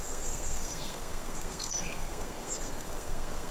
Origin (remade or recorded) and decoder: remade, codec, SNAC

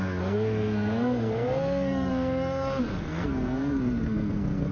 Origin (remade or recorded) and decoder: remade, codec, SNAC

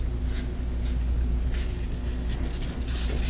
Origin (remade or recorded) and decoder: recorded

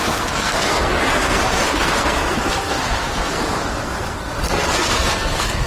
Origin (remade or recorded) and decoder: remade, codec, SNAC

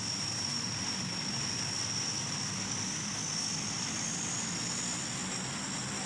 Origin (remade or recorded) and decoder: recorded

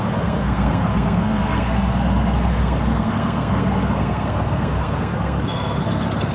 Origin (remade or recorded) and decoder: remade, codec, SNAC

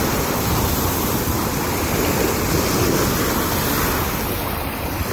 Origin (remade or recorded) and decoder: recorded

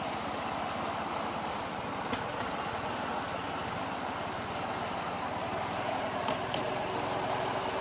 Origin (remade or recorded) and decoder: recorded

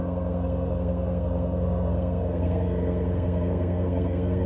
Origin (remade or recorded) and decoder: remade, codec, SNAC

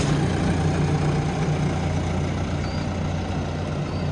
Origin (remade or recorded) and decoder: recorded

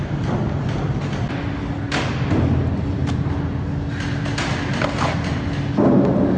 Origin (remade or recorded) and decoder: recorded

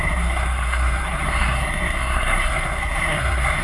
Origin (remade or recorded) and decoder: remade, codec, SNAC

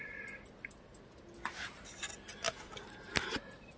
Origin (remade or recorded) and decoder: recorded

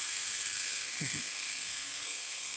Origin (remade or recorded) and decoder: remade, codec, SNAC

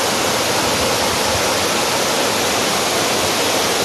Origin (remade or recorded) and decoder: recorded